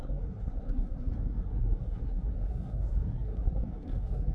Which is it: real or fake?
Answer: fake